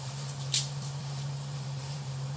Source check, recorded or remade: remade